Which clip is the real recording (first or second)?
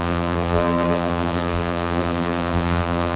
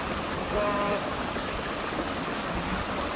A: second